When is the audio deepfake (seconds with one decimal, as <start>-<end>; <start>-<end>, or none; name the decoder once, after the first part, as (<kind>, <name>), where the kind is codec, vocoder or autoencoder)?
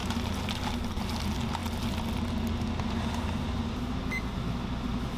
none